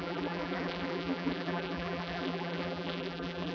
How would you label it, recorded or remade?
remade